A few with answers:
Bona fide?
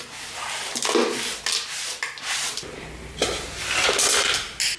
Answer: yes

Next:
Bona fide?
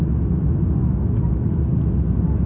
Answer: yes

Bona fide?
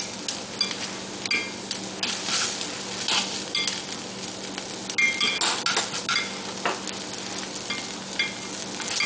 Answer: yes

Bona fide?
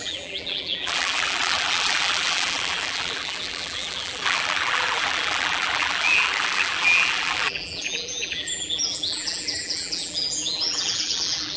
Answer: no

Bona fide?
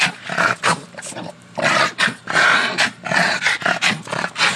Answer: no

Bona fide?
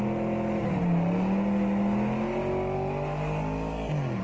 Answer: yes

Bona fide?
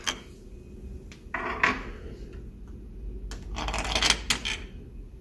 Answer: yes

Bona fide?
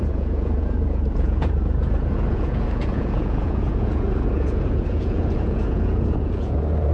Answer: no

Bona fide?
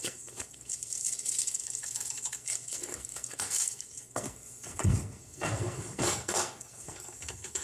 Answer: no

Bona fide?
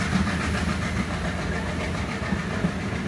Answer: yes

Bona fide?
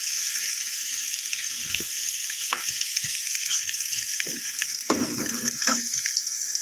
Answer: no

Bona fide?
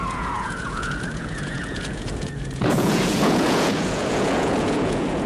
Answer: no